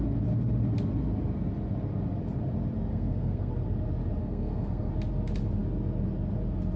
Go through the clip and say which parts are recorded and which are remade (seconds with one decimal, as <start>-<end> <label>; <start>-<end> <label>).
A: 0.0-2.9 recorded; 2.9-3.5 remade; 3.5-4.2 recorded; 4.2-4.9 remade; 4.9-6.8 recorded